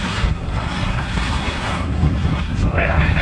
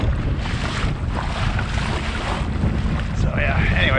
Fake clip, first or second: first